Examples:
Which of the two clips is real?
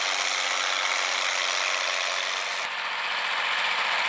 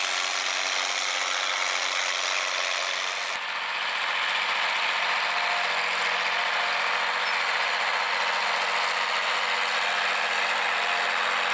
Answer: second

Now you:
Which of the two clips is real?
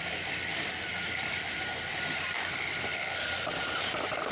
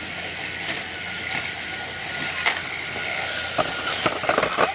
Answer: second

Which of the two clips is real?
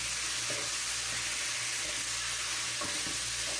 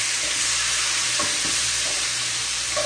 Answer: first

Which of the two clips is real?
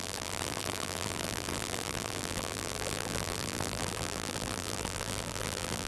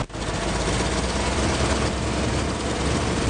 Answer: second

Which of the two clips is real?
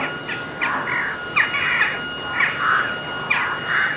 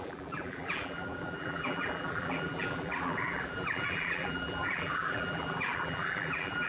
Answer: first